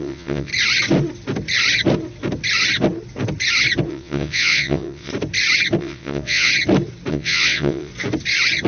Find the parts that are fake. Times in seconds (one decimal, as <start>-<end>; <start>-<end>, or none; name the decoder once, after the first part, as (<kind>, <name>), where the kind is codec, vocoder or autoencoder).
0.0-0.5 (vocoder, WaveNeXt); 3.9-5.1; 5.8-6.5; 7.1-7.9